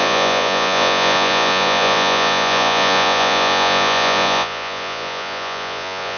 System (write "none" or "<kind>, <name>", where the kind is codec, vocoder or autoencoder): vocoder, Vocos